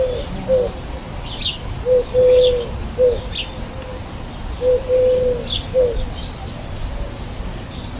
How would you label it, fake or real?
real